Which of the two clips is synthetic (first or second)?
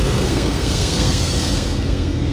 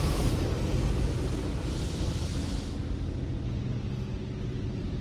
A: first